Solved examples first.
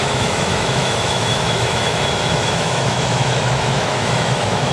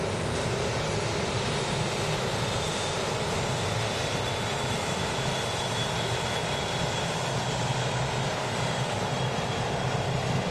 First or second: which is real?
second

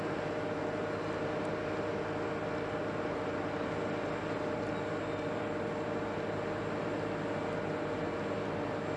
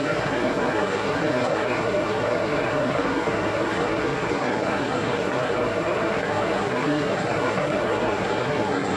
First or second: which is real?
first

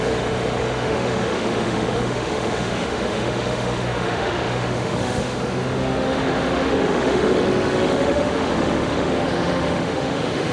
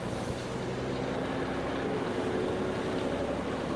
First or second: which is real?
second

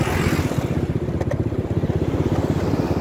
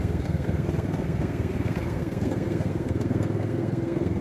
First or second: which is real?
first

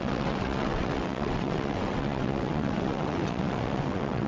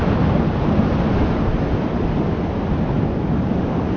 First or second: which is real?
second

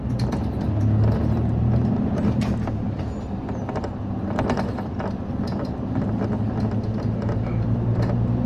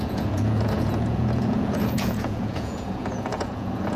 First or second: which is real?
first